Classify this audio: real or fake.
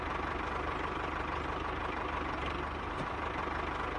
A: real